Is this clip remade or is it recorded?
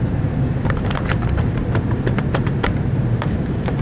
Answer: remade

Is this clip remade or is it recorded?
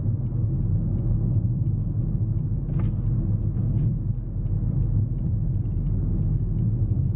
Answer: recorded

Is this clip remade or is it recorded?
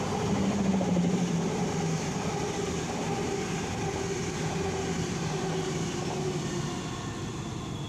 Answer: recorded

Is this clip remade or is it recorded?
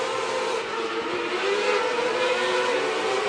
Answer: remade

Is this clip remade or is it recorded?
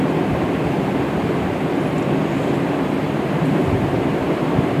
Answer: recorded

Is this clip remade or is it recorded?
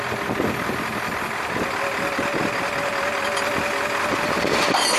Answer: remade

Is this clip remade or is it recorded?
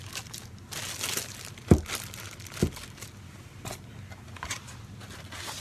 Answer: recorded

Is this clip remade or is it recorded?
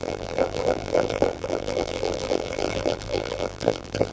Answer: remade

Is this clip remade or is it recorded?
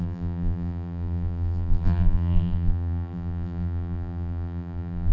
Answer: remade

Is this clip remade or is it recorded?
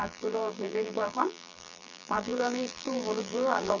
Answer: remade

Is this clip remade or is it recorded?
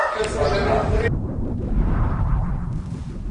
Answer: remade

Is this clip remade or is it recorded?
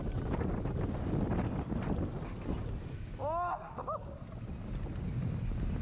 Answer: recorded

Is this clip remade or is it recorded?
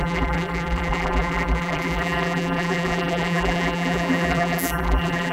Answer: remade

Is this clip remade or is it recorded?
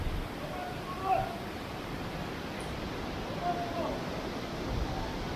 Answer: remade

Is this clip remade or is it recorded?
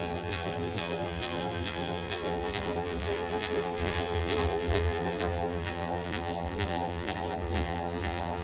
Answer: remade